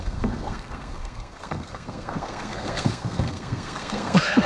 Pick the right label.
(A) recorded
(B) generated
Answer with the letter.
B